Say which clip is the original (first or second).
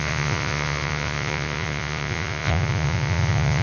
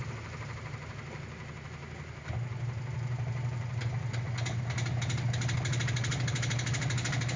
second